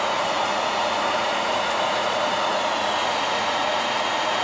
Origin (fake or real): fake